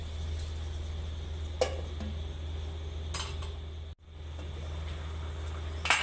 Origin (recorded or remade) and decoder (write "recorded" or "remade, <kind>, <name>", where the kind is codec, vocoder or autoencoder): recorded